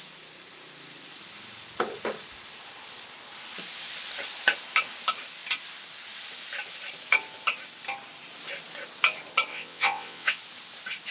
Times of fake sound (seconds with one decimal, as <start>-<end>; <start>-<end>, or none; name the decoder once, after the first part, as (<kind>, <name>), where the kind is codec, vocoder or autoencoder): 9.5-10.4 (vocoder, WaveNeXt)